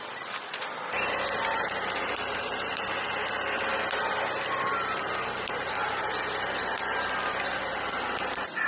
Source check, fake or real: fake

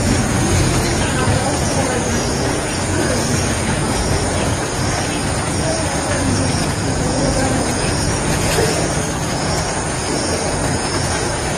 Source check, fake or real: fake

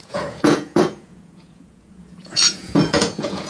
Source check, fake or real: fake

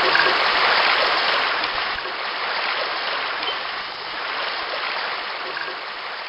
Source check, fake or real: real